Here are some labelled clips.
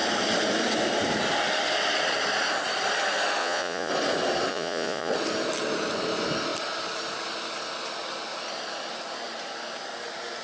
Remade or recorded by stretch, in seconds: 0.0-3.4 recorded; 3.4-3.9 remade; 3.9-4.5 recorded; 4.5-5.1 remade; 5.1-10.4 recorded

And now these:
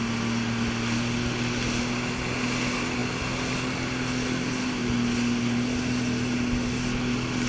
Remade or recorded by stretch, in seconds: 0.0-7.5 recorded

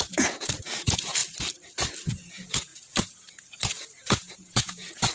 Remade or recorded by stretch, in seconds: 0.0-1.2 remade; 1.2-2.1 recorded; 2.1-5.1 remade

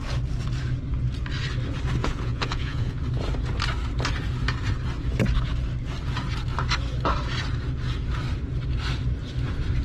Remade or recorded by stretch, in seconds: 0.0-2.0 recorded; 2.0-3.0 remade; 3.0-9.8 recorded

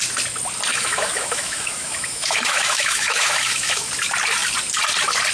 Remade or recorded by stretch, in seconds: 0.0-0.7 recorded; 0.7-3.9 remade; 3.9-5.3 recorded

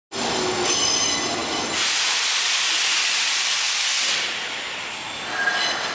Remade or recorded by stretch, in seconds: 0.0-5.9 recorded

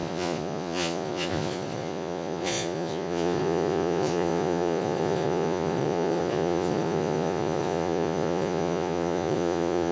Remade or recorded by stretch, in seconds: 0.0-9.9 remade